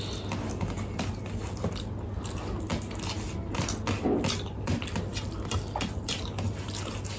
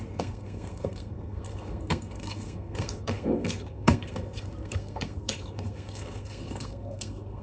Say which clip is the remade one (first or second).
second